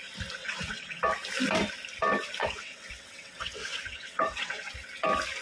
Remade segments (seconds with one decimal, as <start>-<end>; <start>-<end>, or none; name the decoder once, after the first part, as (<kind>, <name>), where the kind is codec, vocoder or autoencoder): 0.4-1.0 (vocoder, WaveNeXt); 2.4-4.7